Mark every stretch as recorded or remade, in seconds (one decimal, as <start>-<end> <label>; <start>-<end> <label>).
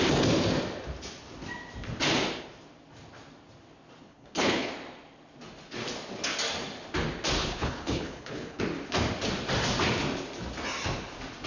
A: 0.0-4.0 recorded; 4.0-4.7 remade; 4.7-7.4 recorded; 7.4-8.6 remade; 8.6-11.5 recorded